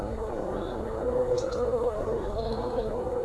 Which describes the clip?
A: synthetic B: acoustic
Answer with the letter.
A